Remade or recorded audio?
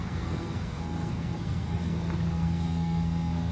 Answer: remade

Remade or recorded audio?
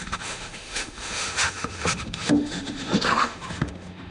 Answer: remade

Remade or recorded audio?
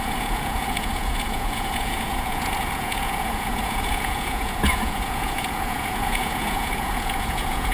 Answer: remade